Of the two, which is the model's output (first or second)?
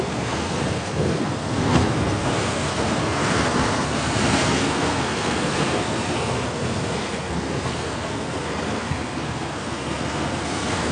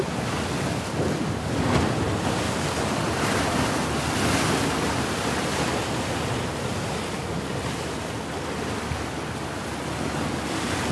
first